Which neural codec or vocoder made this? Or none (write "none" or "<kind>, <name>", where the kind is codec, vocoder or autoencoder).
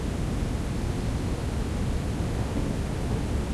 none